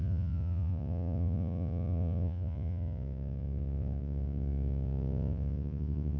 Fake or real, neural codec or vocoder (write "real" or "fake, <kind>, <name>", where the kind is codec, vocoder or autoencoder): fake, vocoder, Vocos